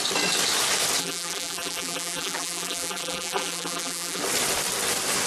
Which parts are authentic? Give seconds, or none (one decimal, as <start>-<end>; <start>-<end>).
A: 0.0-1.0; 4.2-5.3